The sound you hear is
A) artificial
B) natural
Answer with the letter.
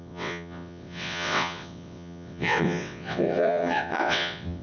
A